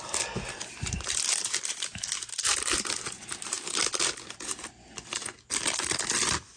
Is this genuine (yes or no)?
yes